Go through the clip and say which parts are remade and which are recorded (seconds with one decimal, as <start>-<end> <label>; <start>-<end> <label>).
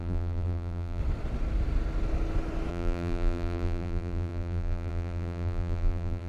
0.0-1.0 remade; 1.0-2.7 recorded; 2.7-6.3 remade